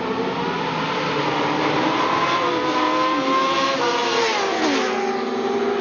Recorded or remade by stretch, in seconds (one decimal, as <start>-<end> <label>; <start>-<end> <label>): 0.0-5.8 recorded